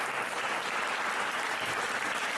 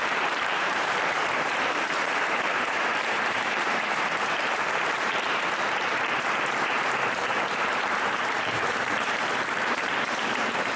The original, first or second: first